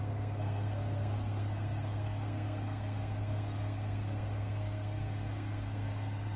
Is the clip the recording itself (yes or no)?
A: no